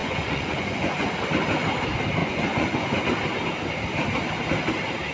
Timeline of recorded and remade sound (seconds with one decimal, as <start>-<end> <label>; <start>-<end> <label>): 0.0-1.1 remade; 1.1-2.2 recorded; 2.2-3.0 remade; 3.0-5.1 recorded

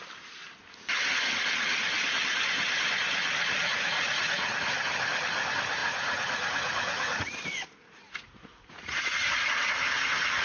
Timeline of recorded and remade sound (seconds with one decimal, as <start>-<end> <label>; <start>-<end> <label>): 0.0-3.6 recorded; 3.6-4.7 remade; 4.7-5.8 recorded; 5.8-9.7 remade; 9.7-10.4 recorded

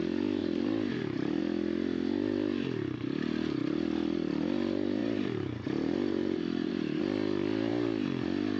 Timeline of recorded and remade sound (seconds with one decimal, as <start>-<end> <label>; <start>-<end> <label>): 0.0-0.4 recorded; 0.4-1.4 remade; 1.4-5.0 recorded; 5.0-7.0 remade; 7.0-8.6 recorded

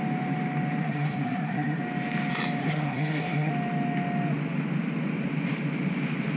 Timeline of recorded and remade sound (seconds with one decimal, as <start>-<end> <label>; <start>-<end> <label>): 0.0-0.8 recorded; 0.8-1.8 remade; 1.8-2.6 recorded; 2.6-3.5 remade; 3.5-6.4 recorded

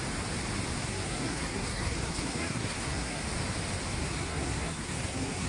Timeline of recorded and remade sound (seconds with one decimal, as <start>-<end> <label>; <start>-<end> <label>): 0.0-0.8 recorded; 0.8-3.2 remade; 3.2-4.0 recorded; 4.0-5.5 remade

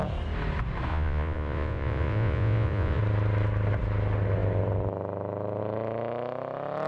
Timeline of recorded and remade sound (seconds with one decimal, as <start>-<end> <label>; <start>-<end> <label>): 0.0-0.9 recorded; 0.9-3.0 remade; 3.0-6.9 recorded

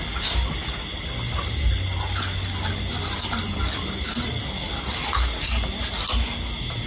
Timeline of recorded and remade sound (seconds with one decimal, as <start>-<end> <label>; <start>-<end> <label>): 0.0-2.9 recorded; 2.9-4.5 remade; 4.5-6.9 recorded